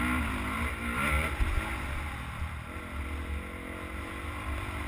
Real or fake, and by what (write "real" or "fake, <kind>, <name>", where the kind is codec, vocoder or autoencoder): real